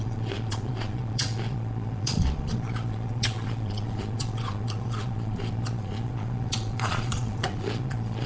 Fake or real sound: fake